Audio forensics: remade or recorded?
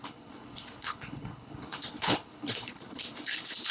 remade